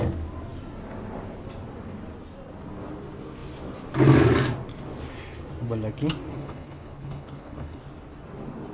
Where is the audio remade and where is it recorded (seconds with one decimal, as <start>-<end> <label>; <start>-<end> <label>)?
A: 0.0-6.3 recorded; 6.3-7.8 remade; 7.8-8.7 recorded